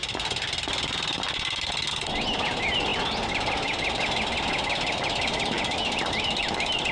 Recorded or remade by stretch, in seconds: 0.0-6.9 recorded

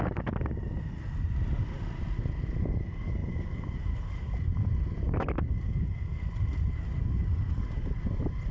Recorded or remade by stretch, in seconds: 0.0-3.2 recorded; 3.2-5.5 remade; 5.5-8.5 recorded